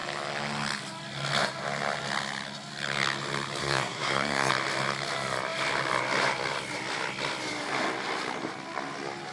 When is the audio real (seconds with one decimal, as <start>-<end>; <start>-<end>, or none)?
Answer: 0.0-3.6; 4.5-9.3